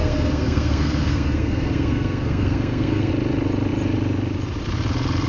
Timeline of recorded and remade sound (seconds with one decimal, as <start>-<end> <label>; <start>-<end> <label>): 0.0-3.1 remade; 3.1-5.3 recorded